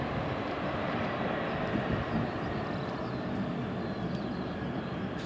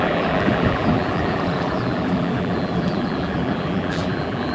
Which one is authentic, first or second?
first